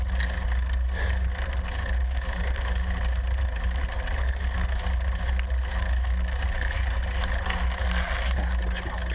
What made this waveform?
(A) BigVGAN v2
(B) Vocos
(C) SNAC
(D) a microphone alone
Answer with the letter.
D